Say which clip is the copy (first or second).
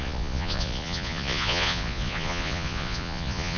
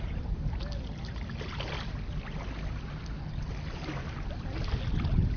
first